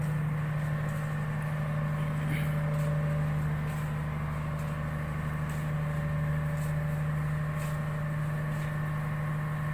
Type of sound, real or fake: real